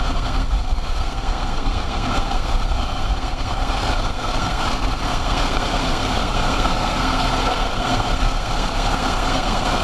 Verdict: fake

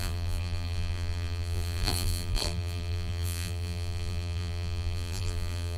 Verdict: fake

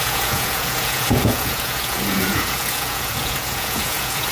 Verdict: fake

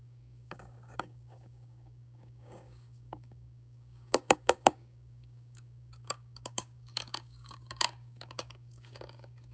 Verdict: fake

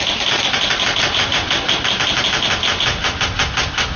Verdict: real